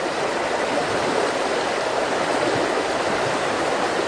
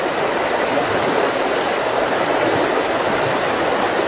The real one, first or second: second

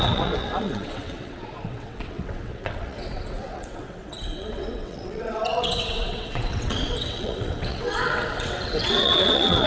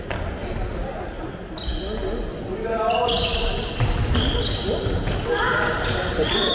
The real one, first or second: second